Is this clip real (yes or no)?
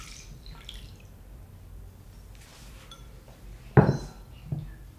no